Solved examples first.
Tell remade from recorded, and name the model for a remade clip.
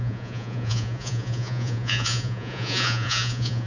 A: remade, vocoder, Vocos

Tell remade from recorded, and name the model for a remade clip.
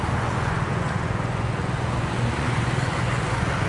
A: remade, vocoder, Vocos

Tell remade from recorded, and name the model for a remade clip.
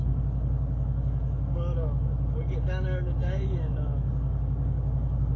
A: remade, codec, DAC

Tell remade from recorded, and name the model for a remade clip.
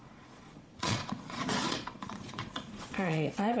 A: remade, vocoder, Vocos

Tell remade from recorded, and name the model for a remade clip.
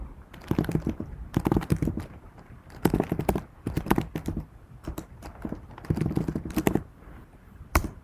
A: remade, vocoder, BigVGAN v2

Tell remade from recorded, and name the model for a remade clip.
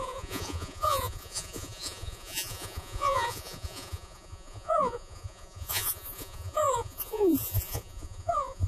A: remade, vocoder, Vocos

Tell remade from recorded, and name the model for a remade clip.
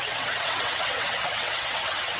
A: remade, vocoder, WaveNeXt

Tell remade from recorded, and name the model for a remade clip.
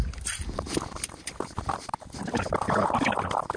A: recorded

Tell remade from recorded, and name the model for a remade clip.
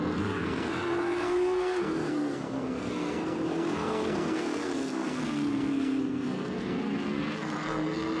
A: remade, codec, SNAC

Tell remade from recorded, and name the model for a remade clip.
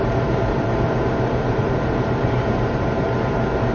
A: remade, vocoder, BigVGAN v2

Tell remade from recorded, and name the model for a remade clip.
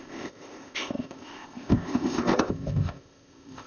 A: remade, codec, ZipCodec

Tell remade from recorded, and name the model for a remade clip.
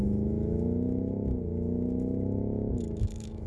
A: remade, autoencoder, DAC-VAE